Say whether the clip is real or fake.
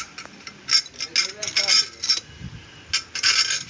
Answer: real